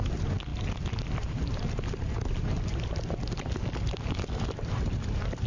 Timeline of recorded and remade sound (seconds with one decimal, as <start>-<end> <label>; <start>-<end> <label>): 0.0-5.5 recorded

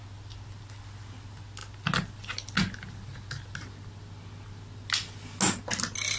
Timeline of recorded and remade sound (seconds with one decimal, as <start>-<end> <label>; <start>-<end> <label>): 0.0-6.2 recorded

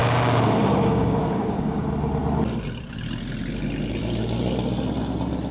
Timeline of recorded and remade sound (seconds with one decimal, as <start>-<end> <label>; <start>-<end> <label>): 0.0-1.8 remade; 1.8-5.5 recorded

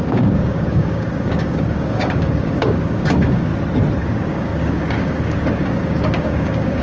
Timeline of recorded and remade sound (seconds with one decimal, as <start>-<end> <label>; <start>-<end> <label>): 0.0-3.5 remade; 3.5-4.0 recorded; 4.0-6.8 remade

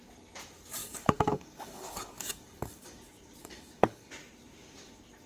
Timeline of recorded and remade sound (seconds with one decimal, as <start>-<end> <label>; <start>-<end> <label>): 0.0-0.8 recorded; 0.8-3.0 remade; 3.0-3.4 recorded; 3.4-4.1 remade; 4.1-5.3 recorded

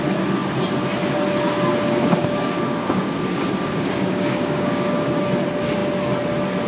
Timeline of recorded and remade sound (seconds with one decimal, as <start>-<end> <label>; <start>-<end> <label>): 0.0-1.7 recorded; 1.7-5.2 remade; 5.2-6.7 recorded